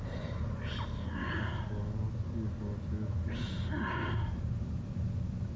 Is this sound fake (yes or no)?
no